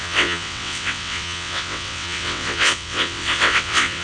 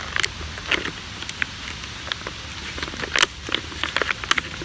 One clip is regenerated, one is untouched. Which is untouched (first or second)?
second